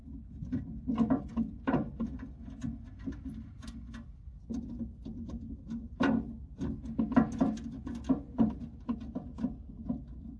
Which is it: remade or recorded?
recorded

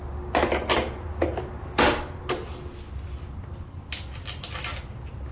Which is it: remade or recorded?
recorded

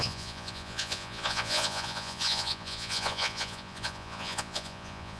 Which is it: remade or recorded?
remade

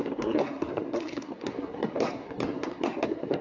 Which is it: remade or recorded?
remade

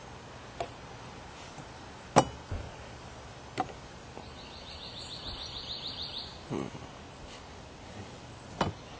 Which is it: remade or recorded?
recorded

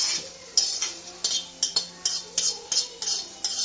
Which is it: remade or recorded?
recorded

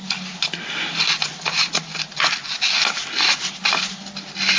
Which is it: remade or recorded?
recorded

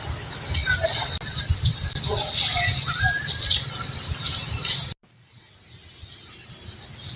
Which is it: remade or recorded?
recorded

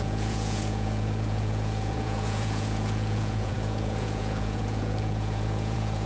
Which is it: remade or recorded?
remade